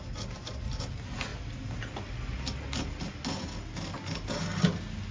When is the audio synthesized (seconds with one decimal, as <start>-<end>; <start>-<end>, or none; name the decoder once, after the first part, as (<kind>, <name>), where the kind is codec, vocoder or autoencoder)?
none